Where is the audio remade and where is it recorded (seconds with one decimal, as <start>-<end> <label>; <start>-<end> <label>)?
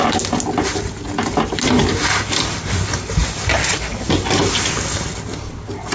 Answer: 0.0-5.9 recorded